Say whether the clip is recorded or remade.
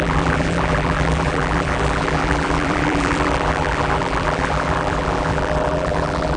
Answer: remade